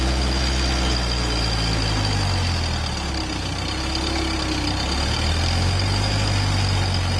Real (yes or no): yes